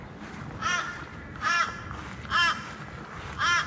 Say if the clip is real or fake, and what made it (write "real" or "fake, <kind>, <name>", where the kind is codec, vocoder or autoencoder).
real